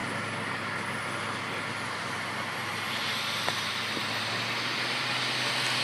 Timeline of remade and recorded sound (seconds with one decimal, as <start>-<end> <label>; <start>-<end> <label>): 0.0-5.8 recorded